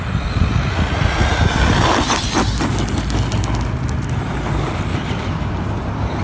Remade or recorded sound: recorded